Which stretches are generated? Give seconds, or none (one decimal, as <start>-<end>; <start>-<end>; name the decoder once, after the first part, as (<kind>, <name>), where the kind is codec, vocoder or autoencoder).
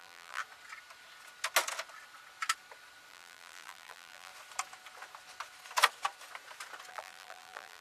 0.0-0.4 (vocoder, BigVGAN v2); 3.1-4.3; 6.9-7.8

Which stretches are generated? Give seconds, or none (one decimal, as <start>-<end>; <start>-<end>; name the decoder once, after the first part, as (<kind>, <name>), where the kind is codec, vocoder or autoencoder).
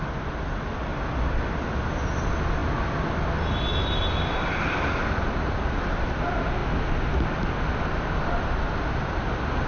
0.9-1.5 (vocoder, BigVGAN v2)